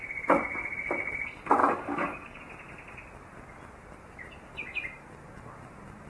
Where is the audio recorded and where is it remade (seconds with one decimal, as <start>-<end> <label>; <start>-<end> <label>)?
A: 0.0-1.6 recorded; 1.6-2.4 remade; 2.4-6.1 recorded